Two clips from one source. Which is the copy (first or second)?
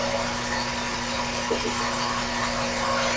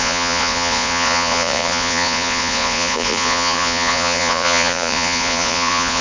second